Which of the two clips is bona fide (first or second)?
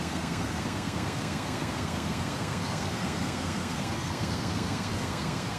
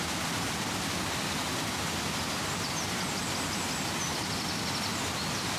second